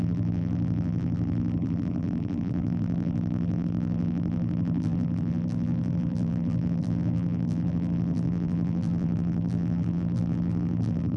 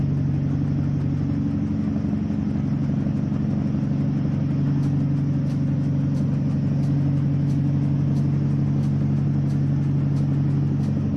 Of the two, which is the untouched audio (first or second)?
second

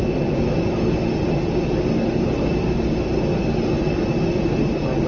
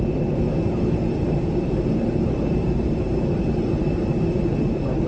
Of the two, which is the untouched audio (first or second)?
first